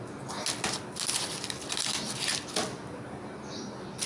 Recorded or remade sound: recorded